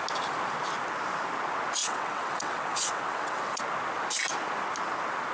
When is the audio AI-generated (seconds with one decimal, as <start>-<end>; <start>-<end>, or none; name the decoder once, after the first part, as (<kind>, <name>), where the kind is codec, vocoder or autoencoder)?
1.8-3.6 (vocoder, WaveNeXt)